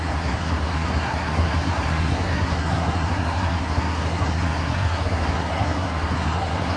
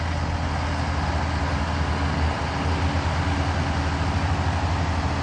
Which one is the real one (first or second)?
second